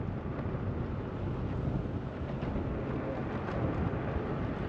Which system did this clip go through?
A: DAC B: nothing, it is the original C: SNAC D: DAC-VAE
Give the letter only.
B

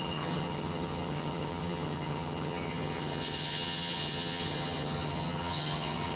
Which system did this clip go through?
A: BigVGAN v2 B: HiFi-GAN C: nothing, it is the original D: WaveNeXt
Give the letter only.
B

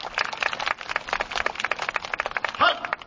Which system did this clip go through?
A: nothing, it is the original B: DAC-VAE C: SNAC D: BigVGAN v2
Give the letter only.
A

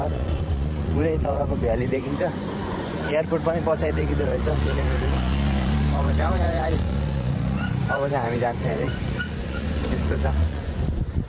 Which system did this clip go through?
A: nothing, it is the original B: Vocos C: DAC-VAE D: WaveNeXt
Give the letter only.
B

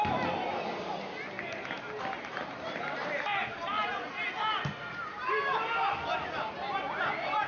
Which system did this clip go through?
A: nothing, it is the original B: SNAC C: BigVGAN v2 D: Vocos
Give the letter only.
A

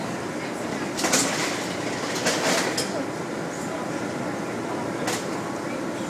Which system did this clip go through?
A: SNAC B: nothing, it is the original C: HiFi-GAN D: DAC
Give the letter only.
B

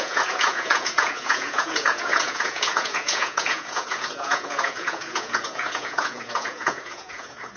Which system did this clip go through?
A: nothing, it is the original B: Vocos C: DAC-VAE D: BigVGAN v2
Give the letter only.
B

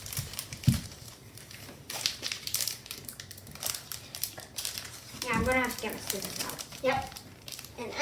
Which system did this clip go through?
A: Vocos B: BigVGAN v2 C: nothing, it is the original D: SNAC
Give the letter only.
B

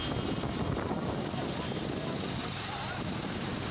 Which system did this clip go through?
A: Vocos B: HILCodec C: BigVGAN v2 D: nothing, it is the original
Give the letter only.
D